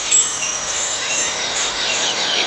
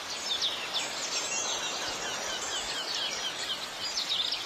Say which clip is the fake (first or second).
first